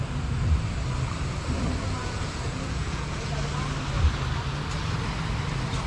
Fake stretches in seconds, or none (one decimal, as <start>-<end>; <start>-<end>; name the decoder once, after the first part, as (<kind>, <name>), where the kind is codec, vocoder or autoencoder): 2.0-3.3 (vocoder, Vocos)